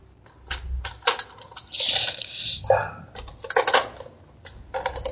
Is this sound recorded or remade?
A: recorded